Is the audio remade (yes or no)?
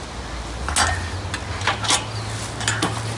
no